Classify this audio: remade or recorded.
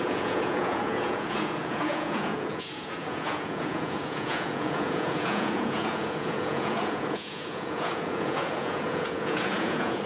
remade